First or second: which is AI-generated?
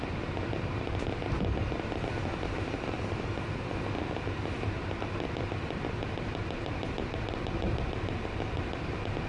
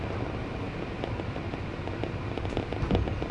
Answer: first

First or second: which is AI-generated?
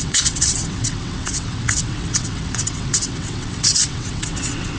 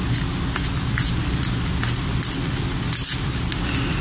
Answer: first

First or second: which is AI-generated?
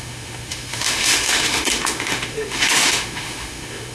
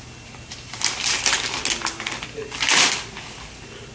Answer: first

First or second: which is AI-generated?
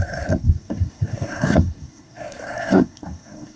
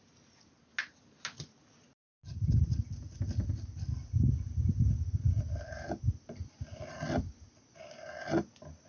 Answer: first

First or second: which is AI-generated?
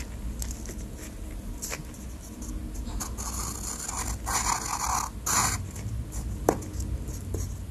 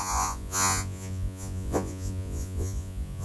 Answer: second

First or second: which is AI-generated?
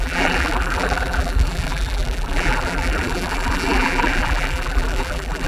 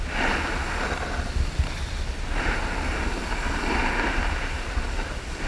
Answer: first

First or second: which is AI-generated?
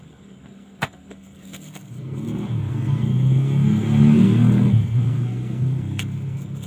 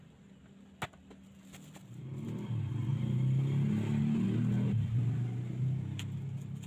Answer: first